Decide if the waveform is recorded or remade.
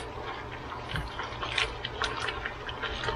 recorded